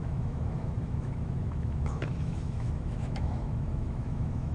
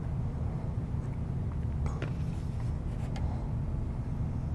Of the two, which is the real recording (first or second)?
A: second